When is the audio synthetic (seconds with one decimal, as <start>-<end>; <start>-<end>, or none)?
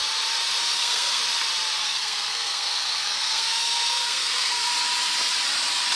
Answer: 0.6-1.2; 1.8-4.7